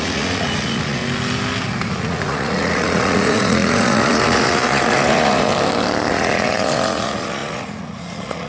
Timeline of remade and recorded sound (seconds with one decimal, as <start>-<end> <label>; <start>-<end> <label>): 0.0-1.0 remade; 1.0-1.9 recorded; 1.9-5.5 remade; 5.5-6.1 recorded; 6.1-8.5 remade